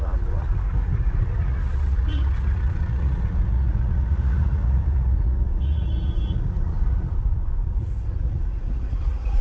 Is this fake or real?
fake